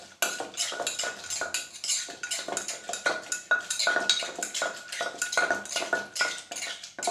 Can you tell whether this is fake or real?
real